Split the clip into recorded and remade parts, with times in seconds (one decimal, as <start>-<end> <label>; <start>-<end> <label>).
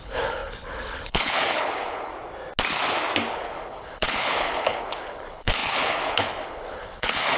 0.0-2.1 remade; 2.1-3.3 recorded; 3.3-7.4 remade